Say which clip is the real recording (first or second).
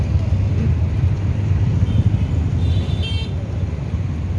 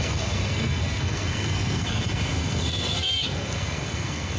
first